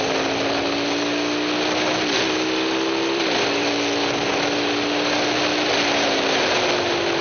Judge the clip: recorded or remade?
recorded